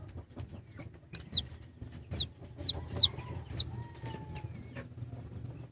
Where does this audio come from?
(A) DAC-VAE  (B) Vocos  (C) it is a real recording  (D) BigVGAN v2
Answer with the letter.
C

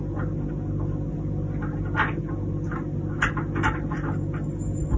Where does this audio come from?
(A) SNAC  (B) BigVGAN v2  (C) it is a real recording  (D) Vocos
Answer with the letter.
C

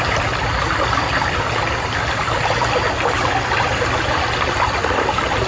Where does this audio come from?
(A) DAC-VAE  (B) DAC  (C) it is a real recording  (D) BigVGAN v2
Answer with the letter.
C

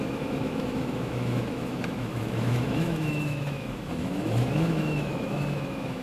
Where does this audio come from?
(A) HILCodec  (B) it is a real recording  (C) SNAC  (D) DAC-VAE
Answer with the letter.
D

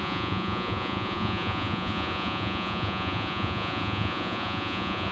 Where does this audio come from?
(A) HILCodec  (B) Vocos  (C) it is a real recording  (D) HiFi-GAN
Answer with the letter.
B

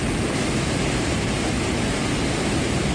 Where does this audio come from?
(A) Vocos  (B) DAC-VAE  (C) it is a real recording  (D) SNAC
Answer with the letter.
C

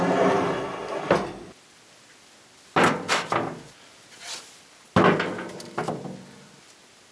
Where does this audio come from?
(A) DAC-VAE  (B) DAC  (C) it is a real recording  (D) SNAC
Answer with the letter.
C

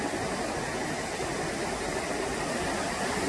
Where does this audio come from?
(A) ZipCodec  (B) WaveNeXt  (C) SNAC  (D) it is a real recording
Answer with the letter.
D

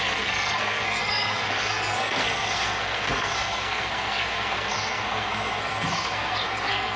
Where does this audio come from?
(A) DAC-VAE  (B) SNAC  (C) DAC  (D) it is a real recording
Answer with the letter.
B